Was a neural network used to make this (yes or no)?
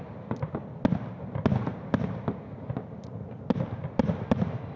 no